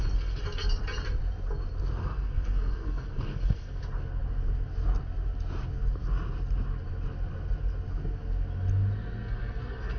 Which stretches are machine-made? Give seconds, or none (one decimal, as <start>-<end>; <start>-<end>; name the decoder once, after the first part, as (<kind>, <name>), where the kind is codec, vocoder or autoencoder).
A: 2.0-3.8 (codec, SNAC); 9.2-10.0

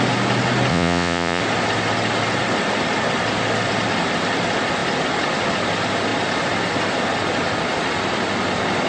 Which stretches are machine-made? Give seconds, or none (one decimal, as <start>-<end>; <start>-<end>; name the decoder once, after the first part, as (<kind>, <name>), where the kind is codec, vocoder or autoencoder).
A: 0.7-1.4 (vocoder, Vocos)